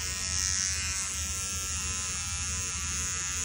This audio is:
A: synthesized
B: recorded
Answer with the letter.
B